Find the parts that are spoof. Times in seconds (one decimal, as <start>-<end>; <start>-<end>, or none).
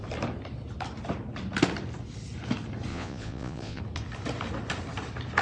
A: 2.9-3.8